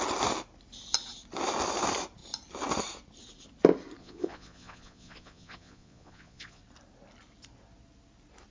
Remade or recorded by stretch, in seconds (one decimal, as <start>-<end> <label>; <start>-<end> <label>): 0.0-4.0 recorded; 4.0-6.6 remade; 6.6-8.5 recorded